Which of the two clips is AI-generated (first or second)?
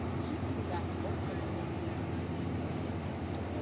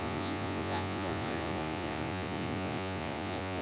second